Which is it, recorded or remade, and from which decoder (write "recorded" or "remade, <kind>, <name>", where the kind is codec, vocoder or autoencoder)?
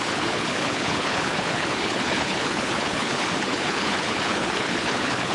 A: remade, codec, HILCodec